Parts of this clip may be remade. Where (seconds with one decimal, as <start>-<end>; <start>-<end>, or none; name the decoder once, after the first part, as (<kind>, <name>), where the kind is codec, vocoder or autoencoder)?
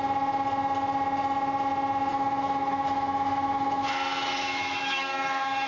2.1-5.7 (autoencoder, DAC-VAE)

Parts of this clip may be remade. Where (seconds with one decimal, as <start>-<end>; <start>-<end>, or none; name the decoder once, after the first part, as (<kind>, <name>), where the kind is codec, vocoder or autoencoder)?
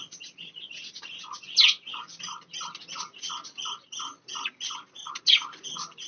1.4-2.1 (vocoder, Vocos)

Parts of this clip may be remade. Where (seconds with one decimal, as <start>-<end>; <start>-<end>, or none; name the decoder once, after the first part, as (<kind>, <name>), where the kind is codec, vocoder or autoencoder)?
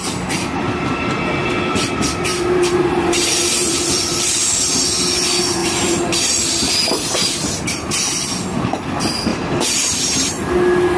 2.3-4.6 (vocoder, BigVGAN v2); 5.6-6.7; 9.3-10.5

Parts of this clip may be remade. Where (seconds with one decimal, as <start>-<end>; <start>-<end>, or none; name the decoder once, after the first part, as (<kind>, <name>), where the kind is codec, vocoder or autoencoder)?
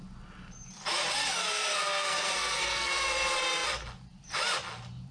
1.4-2.9 (codec, SNAC)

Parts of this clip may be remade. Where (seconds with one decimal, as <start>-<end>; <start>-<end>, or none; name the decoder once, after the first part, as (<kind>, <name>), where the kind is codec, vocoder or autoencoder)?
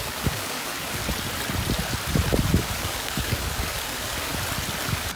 0.0-1.0 (codec, DAC); 2.6-4.3; 4.8-5.2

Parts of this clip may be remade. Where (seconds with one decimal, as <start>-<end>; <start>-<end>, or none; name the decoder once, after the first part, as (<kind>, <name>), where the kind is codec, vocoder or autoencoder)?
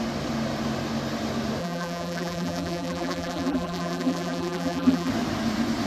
1.6-5.1 (vocoder, BigVGAN v2)